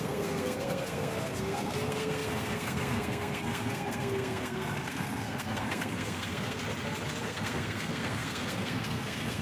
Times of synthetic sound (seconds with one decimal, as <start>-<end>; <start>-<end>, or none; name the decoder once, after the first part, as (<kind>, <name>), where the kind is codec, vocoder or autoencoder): 0.0-6.6 (codec, SNAC); 7.2-9.4